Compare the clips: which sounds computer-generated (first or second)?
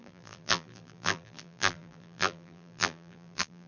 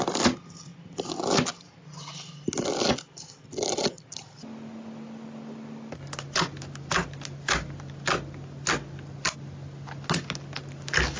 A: first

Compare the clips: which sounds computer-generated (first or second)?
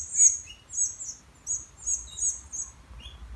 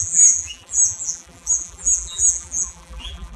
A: second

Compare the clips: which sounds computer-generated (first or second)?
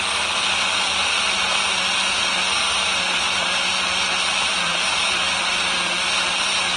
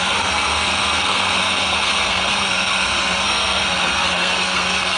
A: second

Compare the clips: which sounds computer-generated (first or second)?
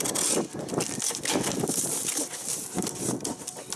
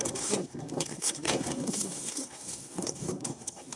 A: second